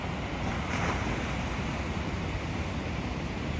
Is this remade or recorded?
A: recorded